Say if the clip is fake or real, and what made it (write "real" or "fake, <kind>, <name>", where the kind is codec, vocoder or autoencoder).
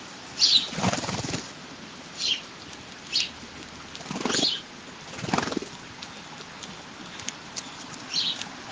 real